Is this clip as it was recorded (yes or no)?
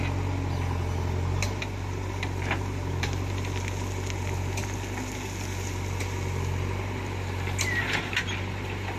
yes